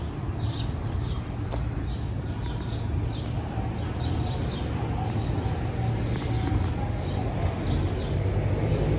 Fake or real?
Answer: real